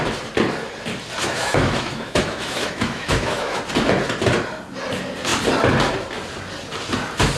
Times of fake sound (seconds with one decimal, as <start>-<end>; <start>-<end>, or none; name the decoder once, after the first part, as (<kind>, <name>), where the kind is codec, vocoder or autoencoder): 1.2-3.6 (autoencoder, DAC-VAE)